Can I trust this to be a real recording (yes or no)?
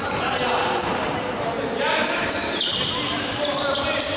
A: yes